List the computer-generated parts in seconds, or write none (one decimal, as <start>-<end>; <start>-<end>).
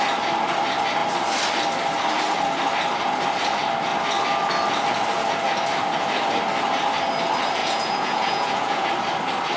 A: 7.6-8.9